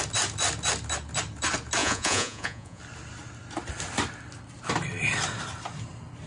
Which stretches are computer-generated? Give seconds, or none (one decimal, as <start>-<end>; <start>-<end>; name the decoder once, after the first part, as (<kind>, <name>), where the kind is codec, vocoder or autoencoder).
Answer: 1.8-2.8 (vocoder, Vocos)